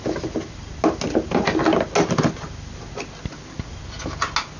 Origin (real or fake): real